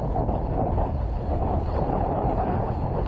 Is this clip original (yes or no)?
no